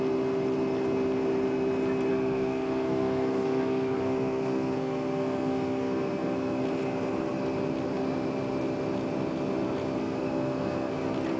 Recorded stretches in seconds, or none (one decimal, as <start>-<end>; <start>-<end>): 0.0-2.1; 6.6-10.0; 10.9-11.4